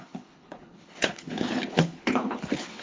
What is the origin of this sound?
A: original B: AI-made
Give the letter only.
B